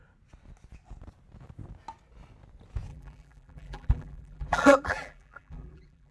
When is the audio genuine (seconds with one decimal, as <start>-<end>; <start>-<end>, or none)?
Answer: 0.0-2.9